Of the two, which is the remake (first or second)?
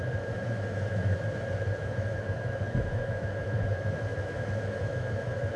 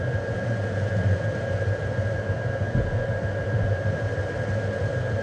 first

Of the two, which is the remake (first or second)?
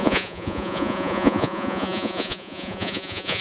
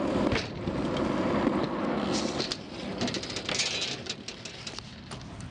first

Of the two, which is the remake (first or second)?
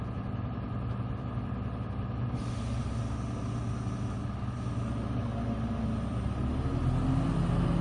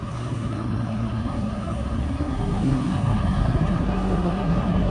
second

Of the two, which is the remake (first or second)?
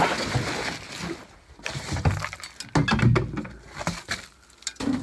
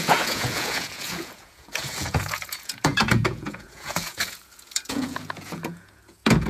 second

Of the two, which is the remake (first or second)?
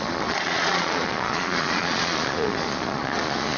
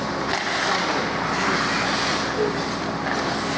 first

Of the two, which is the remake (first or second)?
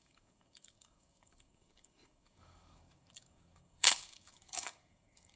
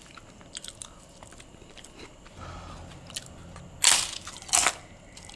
first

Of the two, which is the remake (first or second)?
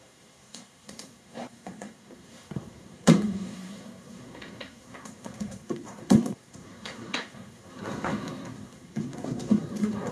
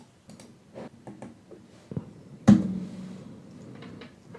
first